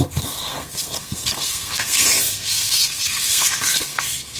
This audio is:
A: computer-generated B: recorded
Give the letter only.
A